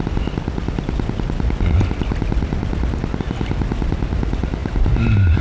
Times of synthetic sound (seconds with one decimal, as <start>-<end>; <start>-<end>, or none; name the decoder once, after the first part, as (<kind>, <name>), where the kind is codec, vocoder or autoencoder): none